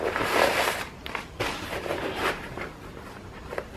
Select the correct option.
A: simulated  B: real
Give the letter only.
B